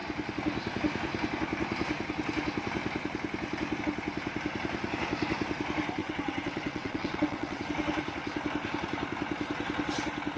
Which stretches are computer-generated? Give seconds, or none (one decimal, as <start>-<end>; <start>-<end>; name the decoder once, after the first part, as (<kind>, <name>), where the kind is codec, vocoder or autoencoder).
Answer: 6.0-7.6 (vocoder, WaveNeXt)